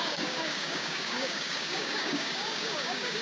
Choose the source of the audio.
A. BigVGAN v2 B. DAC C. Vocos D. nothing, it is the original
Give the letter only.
B